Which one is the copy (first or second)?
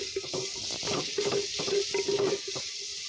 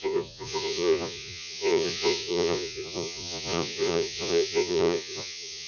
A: second